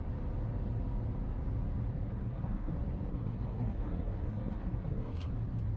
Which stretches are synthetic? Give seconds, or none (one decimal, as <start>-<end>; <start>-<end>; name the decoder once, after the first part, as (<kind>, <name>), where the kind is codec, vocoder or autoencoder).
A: 2.1-2.7 (codec, SNAC); 3.1-5.3